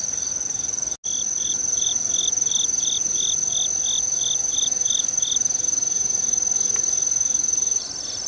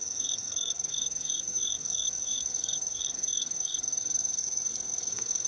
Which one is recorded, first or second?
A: first